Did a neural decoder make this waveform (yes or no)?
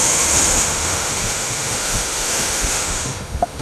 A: yes